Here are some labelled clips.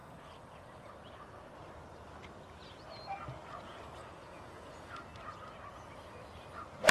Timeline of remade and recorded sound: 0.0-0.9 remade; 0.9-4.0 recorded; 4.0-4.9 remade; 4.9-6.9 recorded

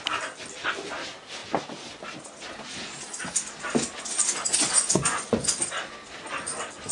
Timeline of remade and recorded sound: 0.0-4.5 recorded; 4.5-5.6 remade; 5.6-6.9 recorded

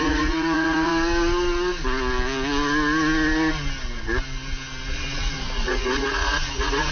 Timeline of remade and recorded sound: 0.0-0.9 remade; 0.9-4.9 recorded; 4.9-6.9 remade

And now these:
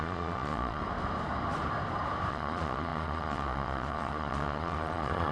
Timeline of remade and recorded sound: 0.0-0.8 remade; 0.8-2.3 recorded; 2.3-5.3 remade